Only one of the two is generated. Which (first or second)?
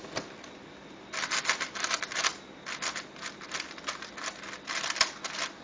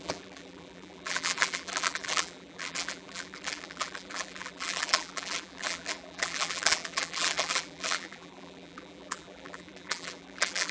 second